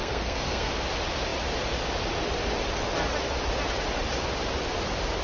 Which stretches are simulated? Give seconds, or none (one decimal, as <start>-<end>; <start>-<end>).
0.0-0.7